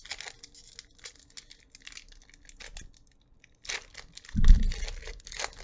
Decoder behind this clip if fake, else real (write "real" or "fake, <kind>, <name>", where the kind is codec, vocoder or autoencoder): real